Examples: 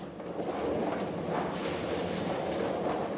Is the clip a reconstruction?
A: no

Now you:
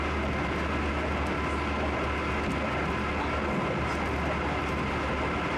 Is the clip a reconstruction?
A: no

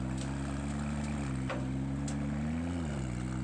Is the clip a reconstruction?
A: no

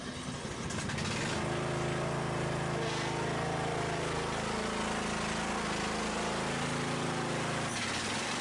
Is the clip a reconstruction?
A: no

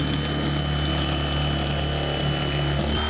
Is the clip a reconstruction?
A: no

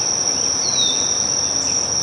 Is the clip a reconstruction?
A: no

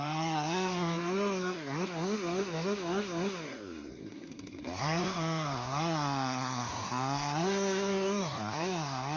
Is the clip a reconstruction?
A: yes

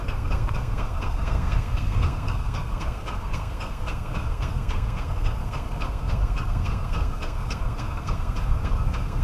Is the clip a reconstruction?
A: yes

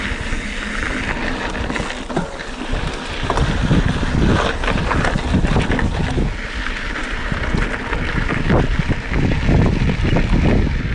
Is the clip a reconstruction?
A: no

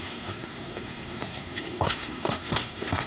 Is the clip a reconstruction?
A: yes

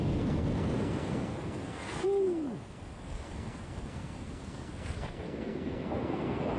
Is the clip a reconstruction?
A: yes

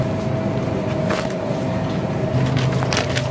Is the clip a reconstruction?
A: no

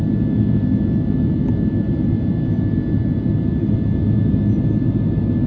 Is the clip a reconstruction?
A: no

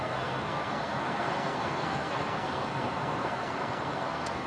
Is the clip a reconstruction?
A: yes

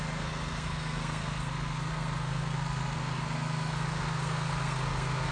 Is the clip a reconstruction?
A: yes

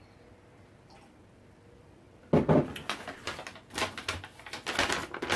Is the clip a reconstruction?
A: no